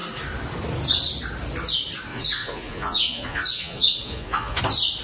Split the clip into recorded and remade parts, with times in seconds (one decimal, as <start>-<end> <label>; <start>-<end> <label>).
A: 0.0-2.1 recorded; 2.1-4.6 remade; 4.6-5.0 recorded